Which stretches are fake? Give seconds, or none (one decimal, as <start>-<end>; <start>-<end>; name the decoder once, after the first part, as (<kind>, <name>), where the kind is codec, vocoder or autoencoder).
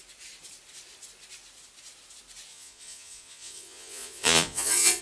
2.5-5.0 (vocoder, Vocos)